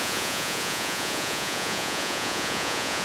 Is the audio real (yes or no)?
no